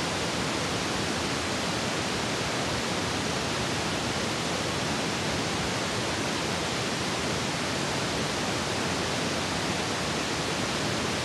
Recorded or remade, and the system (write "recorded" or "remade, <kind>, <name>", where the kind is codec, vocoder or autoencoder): recorded